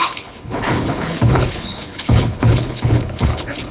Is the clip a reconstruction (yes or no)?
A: yes